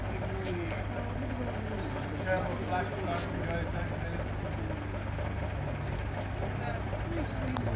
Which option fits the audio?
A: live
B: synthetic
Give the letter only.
A